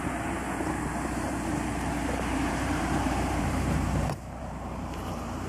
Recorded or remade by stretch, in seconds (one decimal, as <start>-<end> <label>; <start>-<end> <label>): 0.0-1.1 recorded; 1.1-4.4 remade; 4.4-5.5 recorded